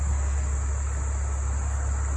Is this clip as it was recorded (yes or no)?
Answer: yes